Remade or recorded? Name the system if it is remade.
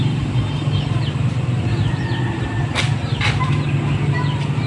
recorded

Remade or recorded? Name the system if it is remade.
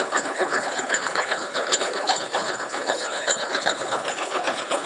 remade, codec, HILCodec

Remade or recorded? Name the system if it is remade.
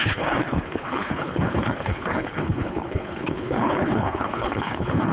remade, codec, HILCodec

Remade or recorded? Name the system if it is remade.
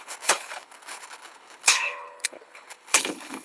remade, codec, HILCodec